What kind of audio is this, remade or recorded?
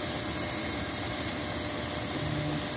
recorded